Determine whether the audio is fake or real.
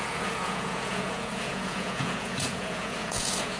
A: fake